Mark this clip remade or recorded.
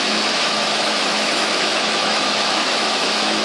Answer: remade